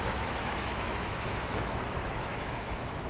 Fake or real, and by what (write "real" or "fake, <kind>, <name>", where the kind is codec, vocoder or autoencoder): fake, autoencoder, DAC-VAE